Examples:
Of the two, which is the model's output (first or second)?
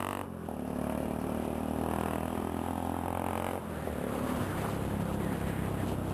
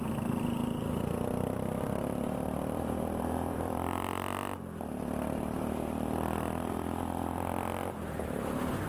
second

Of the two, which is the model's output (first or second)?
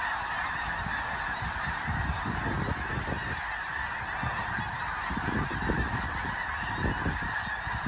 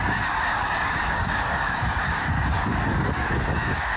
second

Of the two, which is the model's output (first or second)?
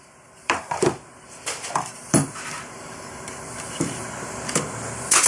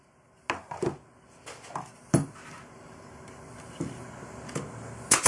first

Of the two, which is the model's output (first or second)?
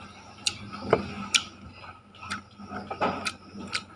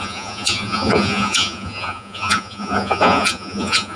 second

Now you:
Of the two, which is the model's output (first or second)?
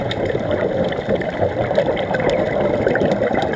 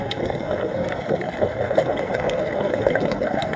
second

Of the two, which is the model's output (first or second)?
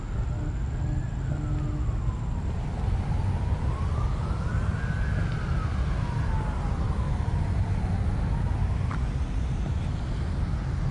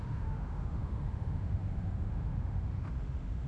second